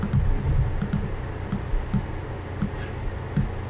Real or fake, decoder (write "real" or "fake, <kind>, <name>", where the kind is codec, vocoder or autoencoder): real